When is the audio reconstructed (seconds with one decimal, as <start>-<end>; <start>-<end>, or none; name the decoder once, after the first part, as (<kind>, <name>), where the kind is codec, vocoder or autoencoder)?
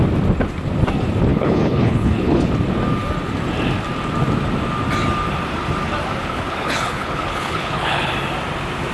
1.3-2.5 (codec, HILCodec); 6.2-8.1